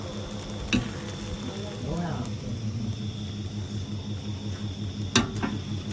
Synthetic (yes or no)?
no